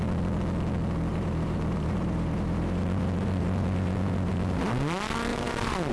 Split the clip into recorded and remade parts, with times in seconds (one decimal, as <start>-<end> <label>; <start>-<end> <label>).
0.0-1.1 recorded; 1.1-4.6 remade; 4.6-5.3 recorded; 5.3-5.9 remade